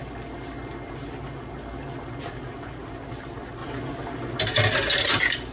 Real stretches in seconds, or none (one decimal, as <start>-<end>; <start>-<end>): 0.0-5.5